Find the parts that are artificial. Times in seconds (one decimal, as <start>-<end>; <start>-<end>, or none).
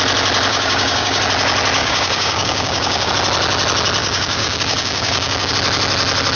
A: 0.5-1.2; 1.8-3.1; 4.0-5.5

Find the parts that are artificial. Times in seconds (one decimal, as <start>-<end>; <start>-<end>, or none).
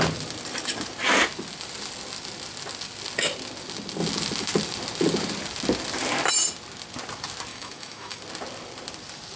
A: 7.5-8.2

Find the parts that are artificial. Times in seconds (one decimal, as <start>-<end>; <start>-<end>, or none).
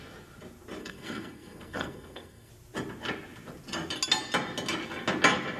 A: 0.8-2.5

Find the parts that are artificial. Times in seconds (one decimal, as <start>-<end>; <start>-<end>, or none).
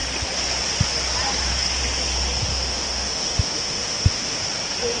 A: 2.5-4.4